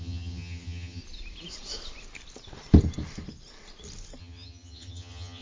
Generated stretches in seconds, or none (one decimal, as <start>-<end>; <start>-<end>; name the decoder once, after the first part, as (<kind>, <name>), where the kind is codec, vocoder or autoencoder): 0.0-1.0 (vocoder, HiFi-GAN); 4.2-5.4